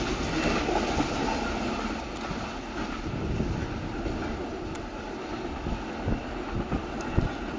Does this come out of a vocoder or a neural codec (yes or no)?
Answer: no